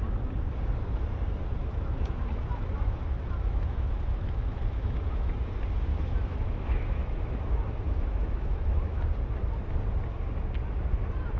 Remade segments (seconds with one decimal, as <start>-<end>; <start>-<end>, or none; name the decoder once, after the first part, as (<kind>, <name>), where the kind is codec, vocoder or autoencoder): 1.6-5.3 (autoencoder, DAC-VAE); 5.9-9.0